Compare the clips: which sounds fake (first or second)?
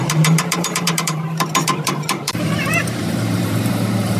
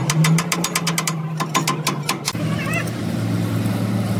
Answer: first